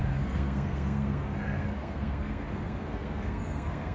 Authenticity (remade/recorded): remade